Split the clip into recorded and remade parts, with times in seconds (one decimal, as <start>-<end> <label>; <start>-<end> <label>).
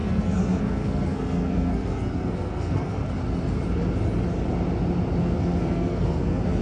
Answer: 0.0-3.0 remade; 3.0-5.2 recorded; 5.2-6.6 remade